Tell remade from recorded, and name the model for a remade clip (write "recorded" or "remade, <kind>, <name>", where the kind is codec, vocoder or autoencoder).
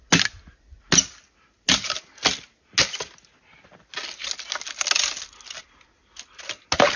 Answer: recorded